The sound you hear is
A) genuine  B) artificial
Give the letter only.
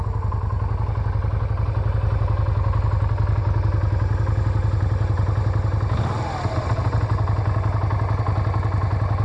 A